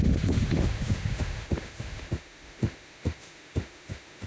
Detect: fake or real fake